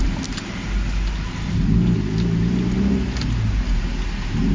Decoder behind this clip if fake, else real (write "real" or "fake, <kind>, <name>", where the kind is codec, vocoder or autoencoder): real